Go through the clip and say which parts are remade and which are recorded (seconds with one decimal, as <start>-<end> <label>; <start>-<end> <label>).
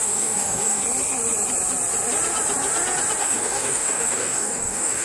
0.0-0.8 remade; 0.8-3.2 recorded; 3.2-5.0 remade